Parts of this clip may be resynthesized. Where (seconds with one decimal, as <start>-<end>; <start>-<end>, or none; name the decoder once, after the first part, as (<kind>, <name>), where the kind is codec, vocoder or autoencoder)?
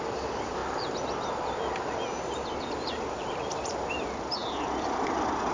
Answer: 0.0-0.6 (vocoder, BigVGAN v2); 2.6-5.5